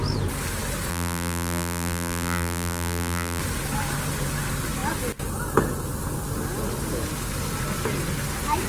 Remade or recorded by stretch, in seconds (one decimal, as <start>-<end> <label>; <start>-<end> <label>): 0.0-0.9 recorded; 0.9-3.4 remade; 3.4-8.7 recorded